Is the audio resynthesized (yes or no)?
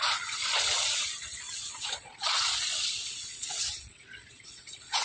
yes